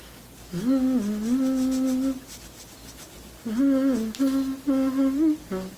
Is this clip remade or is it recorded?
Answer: recorded